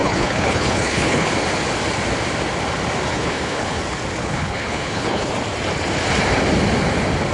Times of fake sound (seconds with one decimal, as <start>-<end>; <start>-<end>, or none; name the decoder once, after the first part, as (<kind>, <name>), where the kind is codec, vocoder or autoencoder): 0.0-1.3 (codec, HILCodec); 3.1-3.8; 4.2-5.3